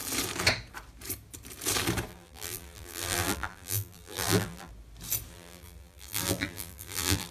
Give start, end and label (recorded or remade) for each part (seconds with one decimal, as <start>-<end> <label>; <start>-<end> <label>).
0.0-2.1 recorded; 2.1-4.7 remade; 4.7-5.3 recorded; 5.3-7.3 remade